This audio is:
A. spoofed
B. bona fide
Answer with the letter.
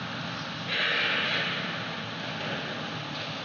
B